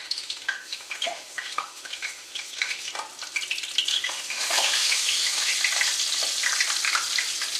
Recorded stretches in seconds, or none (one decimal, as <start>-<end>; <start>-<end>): 2.9-3.9; 5.5-7.6